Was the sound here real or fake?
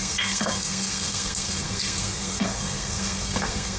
fake